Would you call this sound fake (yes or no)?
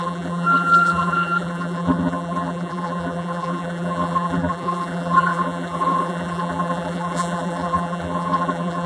yes